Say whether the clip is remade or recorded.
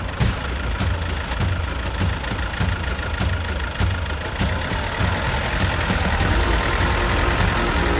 recorded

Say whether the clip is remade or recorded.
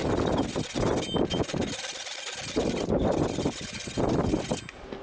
recorded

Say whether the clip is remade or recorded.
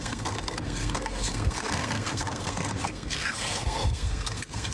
remade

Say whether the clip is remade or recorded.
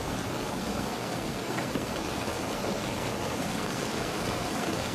remade